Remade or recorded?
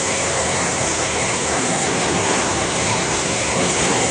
remade